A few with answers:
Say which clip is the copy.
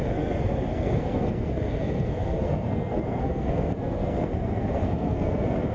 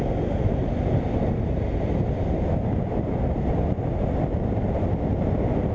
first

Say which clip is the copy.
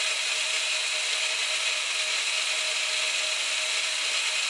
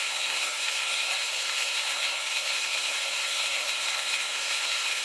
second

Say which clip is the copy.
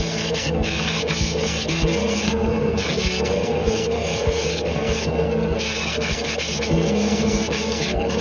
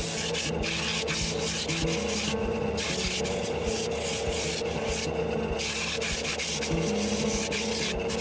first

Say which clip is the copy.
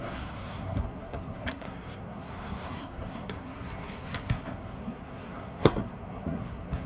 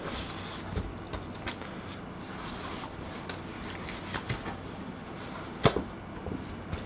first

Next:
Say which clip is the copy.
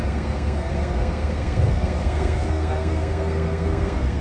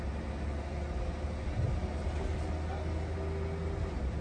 first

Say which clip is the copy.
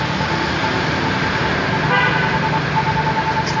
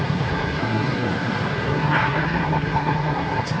second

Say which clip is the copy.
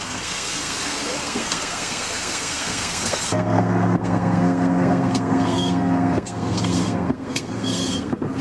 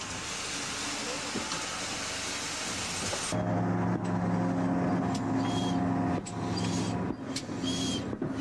first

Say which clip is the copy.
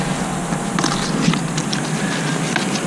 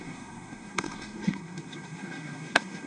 second